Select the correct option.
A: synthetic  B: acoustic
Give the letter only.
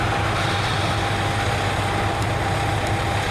B